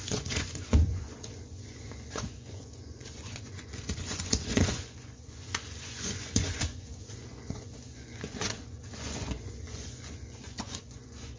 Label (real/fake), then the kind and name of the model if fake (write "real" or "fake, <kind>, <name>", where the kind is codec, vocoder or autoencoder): fake, vocoder, Vocos